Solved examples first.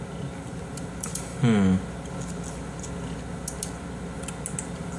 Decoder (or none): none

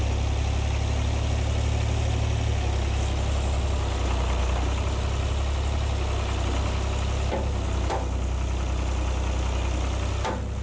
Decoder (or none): none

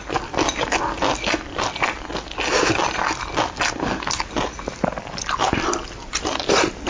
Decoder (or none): none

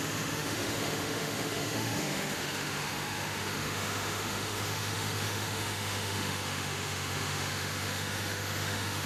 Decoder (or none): autoencoder, DAC-VAE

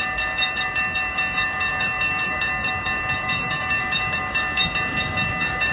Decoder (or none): codec, DAC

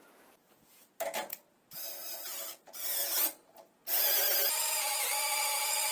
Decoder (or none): vocoder, Vocos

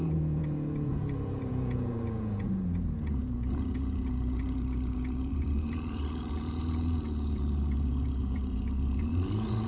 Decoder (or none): vocoder, Vocos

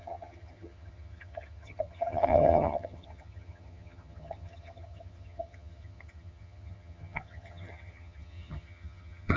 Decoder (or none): vocoder, HiFi-GAN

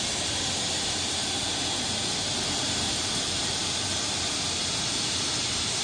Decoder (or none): vocoder, BigVGAN v2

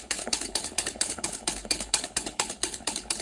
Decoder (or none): codec, HILCodec